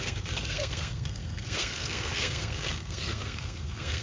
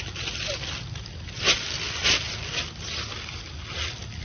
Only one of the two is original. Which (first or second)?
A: second